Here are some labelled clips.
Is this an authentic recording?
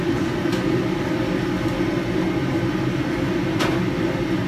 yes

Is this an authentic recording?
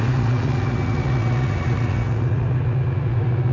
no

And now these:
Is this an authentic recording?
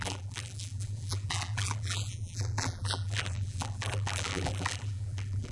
no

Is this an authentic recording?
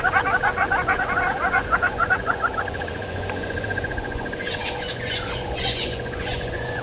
no